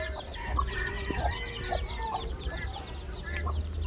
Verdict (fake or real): real